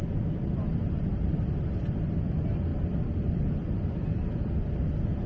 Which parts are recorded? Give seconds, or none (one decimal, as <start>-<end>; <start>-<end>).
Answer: 0.0-5.3